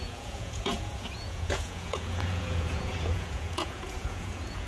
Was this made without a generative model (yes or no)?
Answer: no